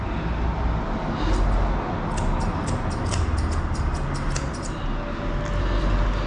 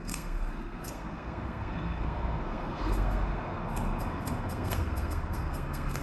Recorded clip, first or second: first